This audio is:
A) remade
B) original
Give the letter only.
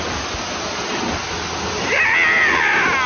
B